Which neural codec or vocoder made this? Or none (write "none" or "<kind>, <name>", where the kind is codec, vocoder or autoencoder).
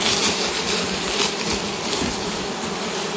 none